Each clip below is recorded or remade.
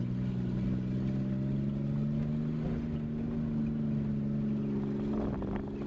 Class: recorded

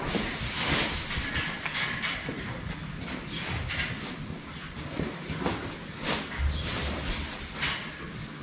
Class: recorded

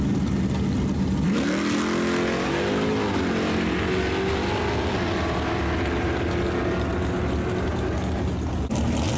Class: recorded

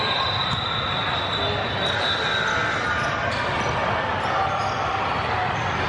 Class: recorded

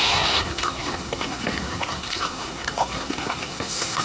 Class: remade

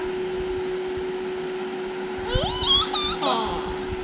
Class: recorded